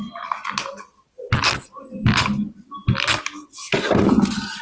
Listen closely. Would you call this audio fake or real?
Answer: real